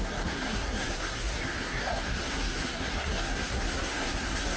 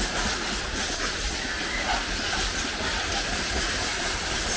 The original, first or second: second